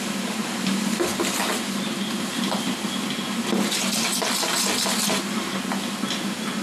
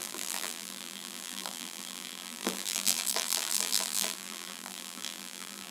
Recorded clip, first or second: first